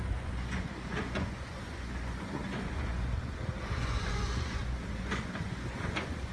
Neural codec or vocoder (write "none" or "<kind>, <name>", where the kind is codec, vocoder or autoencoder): vocoder, Vocos